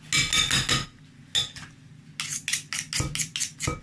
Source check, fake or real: real